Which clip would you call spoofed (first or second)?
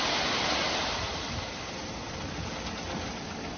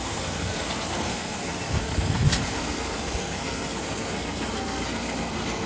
second